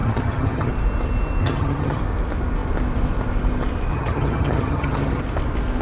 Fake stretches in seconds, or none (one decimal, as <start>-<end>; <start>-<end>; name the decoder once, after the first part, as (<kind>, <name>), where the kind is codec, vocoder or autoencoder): 0.0-0.7 (vocoder, HiFi-GAN); 1.4-2.0; 3.9-5.2